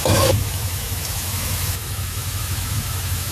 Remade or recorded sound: remade